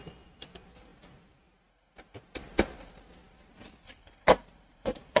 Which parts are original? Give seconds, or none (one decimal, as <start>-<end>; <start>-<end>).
0.9-3.9